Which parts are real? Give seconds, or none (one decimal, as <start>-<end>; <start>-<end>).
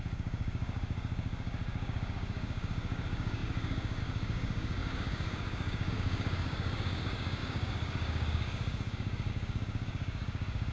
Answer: none